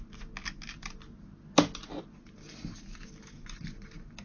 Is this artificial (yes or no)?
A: no